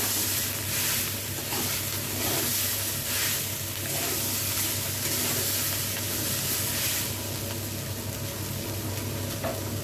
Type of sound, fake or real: real